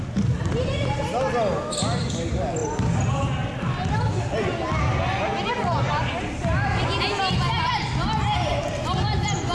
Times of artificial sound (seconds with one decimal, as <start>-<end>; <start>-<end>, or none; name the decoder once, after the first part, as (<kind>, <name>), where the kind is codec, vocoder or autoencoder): none